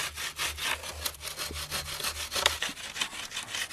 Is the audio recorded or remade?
recorded